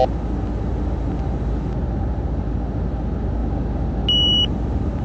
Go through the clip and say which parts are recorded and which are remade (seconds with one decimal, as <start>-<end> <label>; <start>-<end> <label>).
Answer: 0.0-5.0 recorded